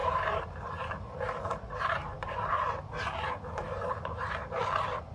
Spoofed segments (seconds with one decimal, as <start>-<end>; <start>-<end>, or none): 0.0-2.5; 3.6-4.6